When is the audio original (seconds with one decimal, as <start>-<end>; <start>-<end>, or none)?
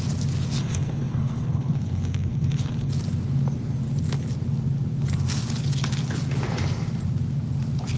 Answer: 0.0-0.6; 2.9-8.0